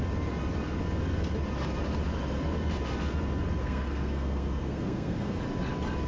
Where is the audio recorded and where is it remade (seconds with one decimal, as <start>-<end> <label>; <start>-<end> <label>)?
0.0-3.6 recorded; 3.6-5.4 remade; 5.4-6.1 recorded